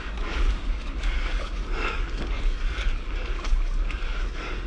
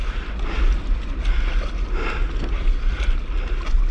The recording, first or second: second